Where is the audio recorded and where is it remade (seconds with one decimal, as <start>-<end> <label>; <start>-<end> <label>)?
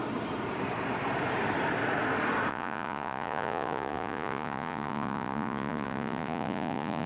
0.0-2.5 recorded; 2.5-7.1 remade